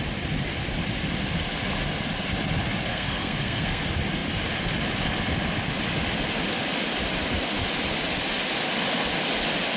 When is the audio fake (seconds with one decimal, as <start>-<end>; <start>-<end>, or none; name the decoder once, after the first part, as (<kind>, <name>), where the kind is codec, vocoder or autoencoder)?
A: 2.9-3.8 (codec, SNAC)